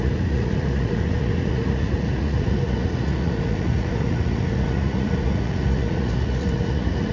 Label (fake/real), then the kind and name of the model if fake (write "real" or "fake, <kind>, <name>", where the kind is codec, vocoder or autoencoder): fake, vocoder, Vocos